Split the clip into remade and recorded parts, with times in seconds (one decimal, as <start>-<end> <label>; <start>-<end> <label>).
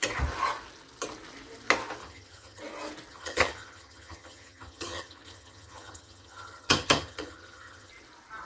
0.0-2.0 recorded; 2.0-2.6 remade; 2.6-3.1 recorded; 3.1-7.9 remade; 7.9-8.4 recorded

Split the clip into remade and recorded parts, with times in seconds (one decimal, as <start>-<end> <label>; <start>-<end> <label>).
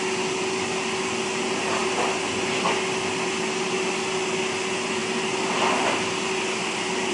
0.0-7.1 recorded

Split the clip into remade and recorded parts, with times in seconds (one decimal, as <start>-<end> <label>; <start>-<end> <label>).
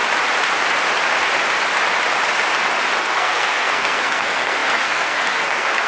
0.0-3.0 recorded; 3.0-5.9 remade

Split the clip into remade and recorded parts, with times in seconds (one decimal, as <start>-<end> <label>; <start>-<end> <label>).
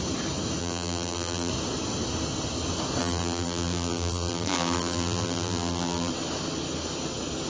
0.0-0.6 recorded; 0.6-1.5 remade; 1.5-3.0 recorded; 3.0-6.1 remade; 6.1-7.5 recorded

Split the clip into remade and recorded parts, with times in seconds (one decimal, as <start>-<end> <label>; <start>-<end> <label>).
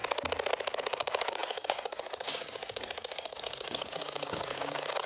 0.0-0.8 recorded; 0.8-5.1 remade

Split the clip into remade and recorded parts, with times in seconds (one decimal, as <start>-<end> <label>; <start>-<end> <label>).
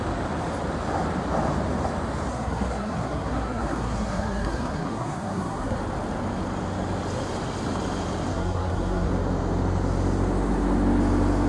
0.0-2.3 recorded; 2.3-5.8 remade; 5.8-8.3 recorded; 8.3-9.1 remade; 9.1-11.5 recorded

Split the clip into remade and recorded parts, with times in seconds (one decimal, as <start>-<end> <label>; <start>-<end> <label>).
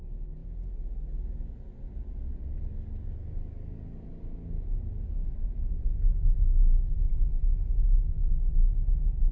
0.0-9.3 recorded